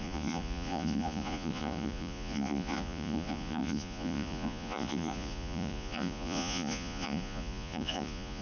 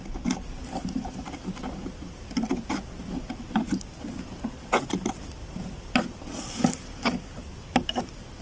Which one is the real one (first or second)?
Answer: second